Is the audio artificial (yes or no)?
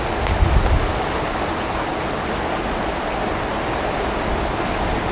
no